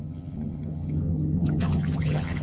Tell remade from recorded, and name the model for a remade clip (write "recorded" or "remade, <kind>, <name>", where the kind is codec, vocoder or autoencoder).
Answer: remade, vocoder, HiFi-GAN